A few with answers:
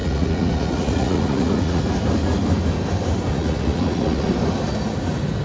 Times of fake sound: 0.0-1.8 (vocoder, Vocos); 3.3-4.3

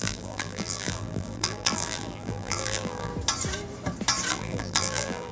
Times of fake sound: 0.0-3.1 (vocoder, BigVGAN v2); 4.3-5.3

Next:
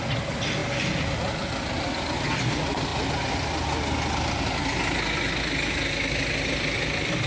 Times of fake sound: none